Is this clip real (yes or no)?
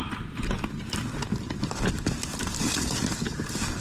yes